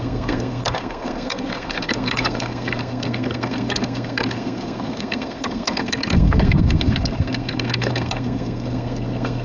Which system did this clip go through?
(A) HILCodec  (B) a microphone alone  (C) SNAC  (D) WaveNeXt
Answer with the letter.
C